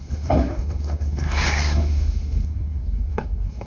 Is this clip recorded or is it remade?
remade